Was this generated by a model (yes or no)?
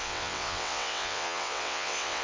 yes